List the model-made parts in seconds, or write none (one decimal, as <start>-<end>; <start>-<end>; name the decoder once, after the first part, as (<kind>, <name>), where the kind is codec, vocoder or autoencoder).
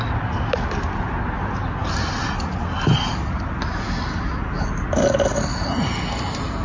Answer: none